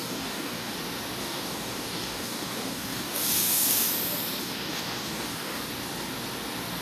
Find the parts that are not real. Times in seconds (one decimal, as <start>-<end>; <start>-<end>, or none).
0.0-0.7; 1.2-3.9; 4.4-5.6